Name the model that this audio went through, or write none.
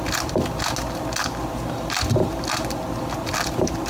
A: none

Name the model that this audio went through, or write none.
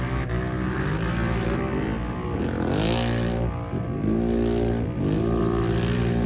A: none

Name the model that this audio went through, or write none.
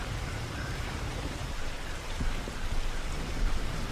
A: vocoder, BigVGAN v2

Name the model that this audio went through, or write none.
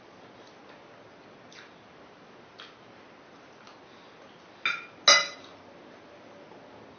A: none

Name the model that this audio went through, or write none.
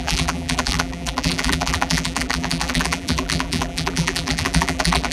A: vocoder, BigVGAN v2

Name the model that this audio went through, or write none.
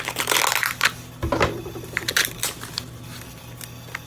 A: none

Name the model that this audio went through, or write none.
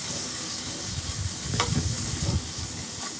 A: codec, DAC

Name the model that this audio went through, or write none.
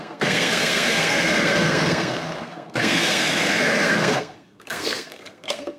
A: codec, SNAC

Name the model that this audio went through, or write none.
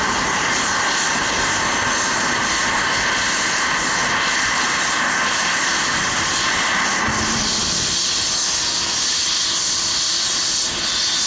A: none